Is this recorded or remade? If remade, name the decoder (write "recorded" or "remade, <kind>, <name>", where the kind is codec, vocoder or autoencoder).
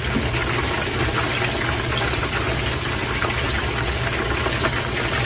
recorded